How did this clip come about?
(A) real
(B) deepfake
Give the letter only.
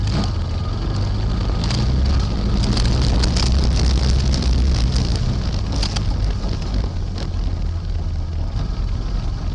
A